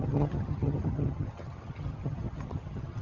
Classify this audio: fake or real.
fake